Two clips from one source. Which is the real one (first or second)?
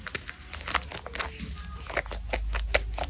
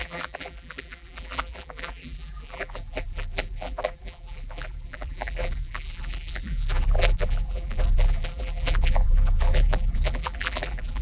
first